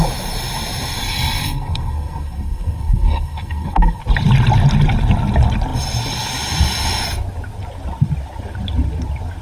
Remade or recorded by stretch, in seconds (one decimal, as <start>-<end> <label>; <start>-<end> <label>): 0.0-1.0 recorded; 1.0-4.0 remade; 4.0-9.4 recorded